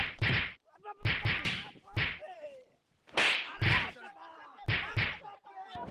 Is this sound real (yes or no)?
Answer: no